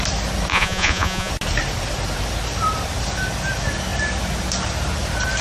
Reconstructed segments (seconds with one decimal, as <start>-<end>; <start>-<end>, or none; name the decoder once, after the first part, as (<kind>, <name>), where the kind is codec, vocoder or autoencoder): 0.5-1.3 (vocoder, Vocos)